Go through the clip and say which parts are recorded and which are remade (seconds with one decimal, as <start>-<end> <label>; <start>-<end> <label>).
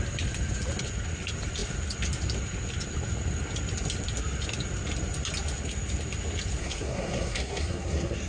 0.0-6.6 recorded; 6.6-8.3 remade